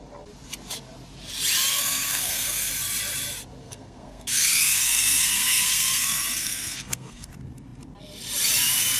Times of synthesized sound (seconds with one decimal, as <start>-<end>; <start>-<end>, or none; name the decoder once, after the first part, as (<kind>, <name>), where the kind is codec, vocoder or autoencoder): 1.7-2.7 (codec, SNAC); 3.6-7.3